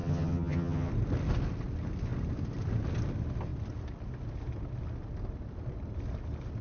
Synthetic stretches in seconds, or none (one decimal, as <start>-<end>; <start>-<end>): 0.0-0.9